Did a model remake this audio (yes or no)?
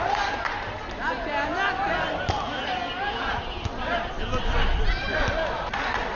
no